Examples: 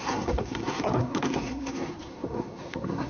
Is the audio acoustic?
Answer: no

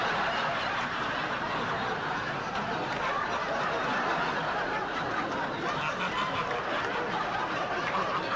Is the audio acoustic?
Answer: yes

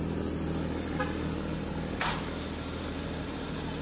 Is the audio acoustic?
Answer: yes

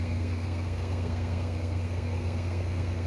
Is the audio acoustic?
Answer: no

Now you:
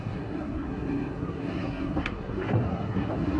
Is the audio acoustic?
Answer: no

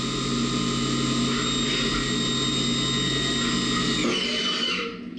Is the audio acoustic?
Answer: yes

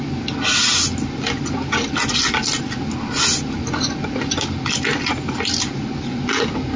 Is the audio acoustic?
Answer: yes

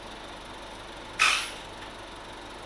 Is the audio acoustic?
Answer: yes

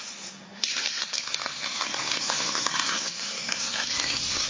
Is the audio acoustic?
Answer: no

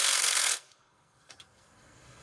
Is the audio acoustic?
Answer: no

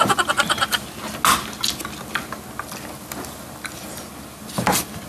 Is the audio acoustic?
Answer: yes